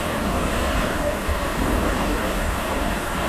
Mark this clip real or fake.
fake